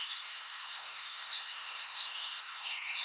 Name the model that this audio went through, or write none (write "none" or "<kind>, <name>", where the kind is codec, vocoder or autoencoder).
codec, SNAC